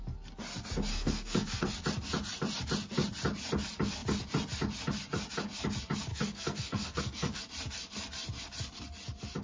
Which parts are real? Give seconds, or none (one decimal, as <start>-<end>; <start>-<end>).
0.0-0.9; 1.7-6.1; 7.4-9.4